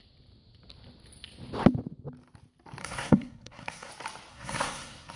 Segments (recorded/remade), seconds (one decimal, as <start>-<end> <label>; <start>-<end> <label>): 0.0-2.8 recorded; 2.8-3.9 remade; 3.9-4.3 recorded; 4.3-5.2 remade